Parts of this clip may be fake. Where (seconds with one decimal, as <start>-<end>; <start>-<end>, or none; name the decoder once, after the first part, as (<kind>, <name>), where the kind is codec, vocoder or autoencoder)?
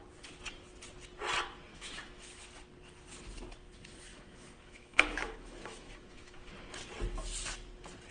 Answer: 1.7-2.4 (autoencoder, DAC-VAE); 4.1-6.5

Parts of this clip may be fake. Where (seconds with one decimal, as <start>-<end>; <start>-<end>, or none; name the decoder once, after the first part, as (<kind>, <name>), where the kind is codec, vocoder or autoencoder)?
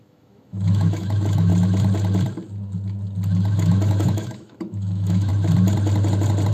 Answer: 0.0-1.5 (autoencoder, DAC-VAE); 3.5-5.3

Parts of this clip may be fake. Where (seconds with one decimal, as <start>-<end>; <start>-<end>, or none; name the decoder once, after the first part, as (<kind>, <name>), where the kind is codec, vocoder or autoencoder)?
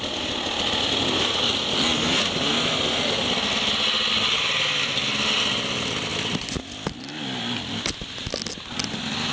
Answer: none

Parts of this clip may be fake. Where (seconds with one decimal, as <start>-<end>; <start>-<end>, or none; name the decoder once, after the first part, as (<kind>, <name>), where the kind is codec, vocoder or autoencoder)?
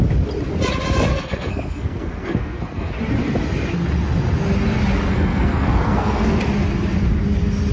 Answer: 1.1-2.9 (codec, SNAC); 5.1-6.4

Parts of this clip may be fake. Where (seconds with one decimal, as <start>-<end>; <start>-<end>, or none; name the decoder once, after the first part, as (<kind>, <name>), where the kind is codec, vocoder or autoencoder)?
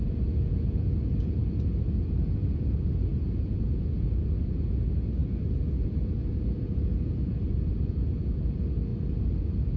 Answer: 0.0-5.2 (vocoder, Vocos); 5.7-8.9; 9.4-9.8